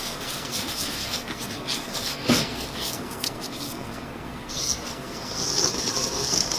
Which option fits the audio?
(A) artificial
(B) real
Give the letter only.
A